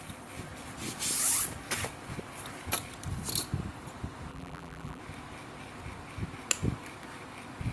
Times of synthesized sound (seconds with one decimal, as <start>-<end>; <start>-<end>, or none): 4.3-5.0